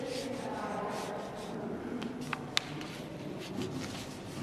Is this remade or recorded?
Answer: recorded